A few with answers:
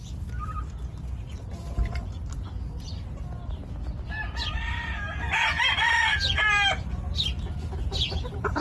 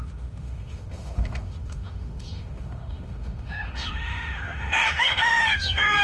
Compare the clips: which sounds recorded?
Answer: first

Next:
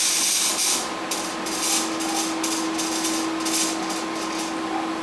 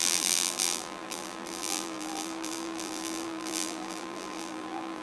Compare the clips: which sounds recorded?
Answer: first